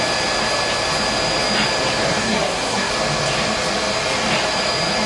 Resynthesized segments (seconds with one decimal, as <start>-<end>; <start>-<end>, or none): 2.2-2.9